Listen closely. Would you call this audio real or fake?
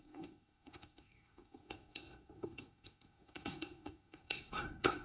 fake